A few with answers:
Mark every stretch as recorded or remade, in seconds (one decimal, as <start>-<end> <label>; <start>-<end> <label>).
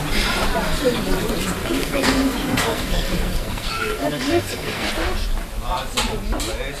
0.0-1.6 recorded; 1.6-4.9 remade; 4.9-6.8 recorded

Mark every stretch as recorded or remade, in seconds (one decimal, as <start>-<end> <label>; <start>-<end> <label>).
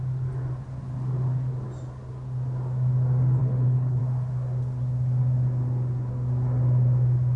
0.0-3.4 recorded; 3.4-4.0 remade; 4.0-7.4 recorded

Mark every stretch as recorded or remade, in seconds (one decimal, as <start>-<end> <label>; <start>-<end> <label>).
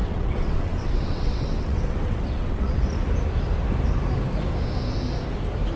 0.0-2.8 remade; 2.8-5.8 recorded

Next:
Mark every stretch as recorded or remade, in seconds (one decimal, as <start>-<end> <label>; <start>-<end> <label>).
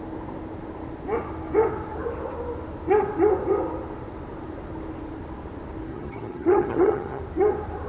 0.0-5.9 recorded; 5.9-7.2 remade; 7.2-7.9 recorded